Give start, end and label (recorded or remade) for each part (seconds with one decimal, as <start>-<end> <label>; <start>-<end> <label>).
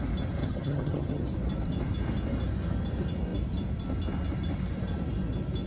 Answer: 0.0-0.4 recorded; 0.4-1.2 remade; 1.2-5.7 recorded